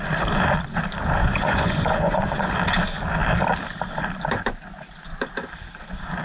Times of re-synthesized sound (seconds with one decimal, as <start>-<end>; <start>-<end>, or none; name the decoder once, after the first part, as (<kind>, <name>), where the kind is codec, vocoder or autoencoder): 1.2-2.5 (vocoder, Vocos)